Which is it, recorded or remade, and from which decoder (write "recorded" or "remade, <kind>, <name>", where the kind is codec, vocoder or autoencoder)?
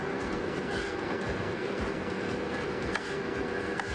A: remade, codec, SNAC